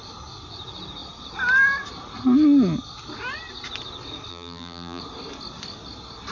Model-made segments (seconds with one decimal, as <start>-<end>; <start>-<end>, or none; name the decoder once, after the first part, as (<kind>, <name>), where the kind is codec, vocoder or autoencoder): 4.3-5.0 (vocoder, BigVGAN v2)